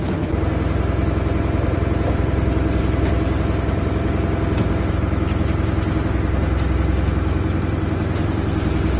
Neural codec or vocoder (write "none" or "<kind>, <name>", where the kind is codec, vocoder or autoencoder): none